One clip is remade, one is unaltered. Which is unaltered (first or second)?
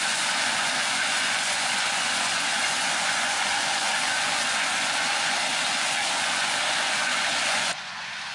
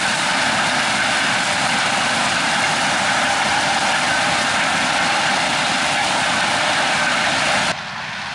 second